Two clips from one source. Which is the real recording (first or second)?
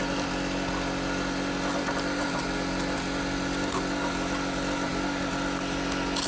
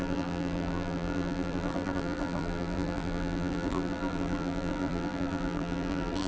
first